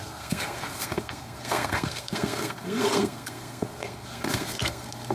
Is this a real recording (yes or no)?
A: no